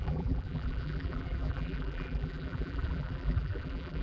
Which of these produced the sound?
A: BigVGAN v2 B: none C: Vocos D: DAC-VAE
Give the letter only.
A